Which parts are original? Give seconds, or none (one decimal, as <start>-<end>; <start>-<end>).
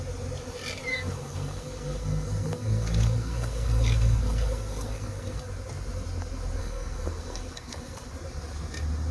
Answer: 0.0-0.9; 5.5-6.6; 8.1-9.1